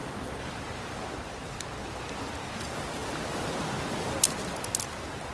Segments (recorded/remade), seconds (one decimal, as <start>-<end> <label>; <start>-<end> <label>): 0.0-2.0 remade; 2.0-5.3 recorded